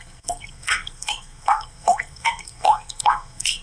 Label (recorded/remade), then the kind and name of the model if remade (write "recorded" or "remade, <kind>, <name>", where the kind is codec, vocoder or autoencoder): remade, codec, SNAC